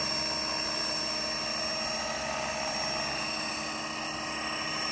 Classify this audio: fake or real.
real